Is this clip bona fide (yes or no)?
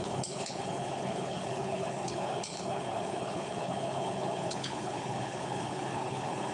no